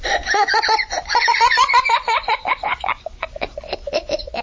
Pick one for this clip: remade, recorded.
remade